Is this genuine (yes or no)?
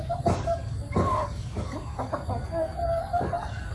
no